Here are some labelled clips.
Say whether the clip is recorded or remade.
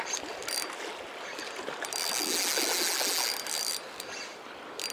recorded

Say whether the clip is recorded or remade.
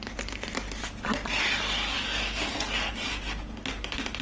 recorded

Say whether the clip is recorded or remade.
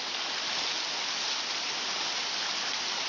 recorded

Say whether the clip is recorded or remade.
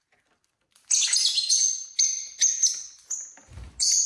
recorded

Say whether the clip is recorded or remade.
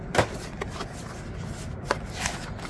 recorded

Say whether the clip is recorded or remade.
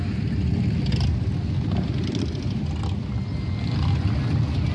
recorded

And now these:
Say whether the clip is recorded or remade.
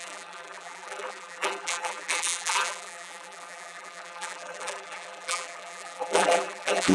remade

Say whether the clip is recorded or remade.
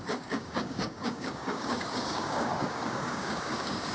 remade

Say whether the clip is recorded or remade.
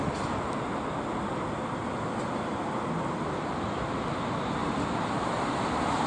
recorded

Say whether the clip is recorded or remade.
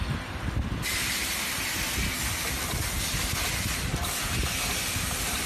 recorded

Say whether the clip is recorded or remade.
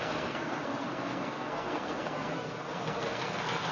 remade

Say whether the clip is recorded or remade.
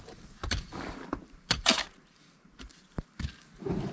remade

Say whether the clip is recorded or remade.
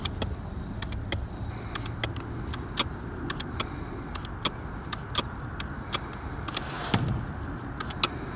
recorded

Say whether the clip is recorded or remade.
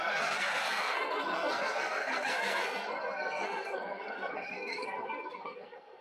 remade